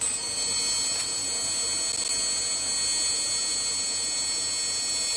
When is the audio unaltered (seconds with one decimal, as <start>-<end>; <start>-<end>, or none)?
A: 0.0-5.2